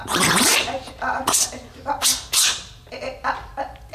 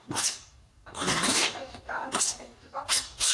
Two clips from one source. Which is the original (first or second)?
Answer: first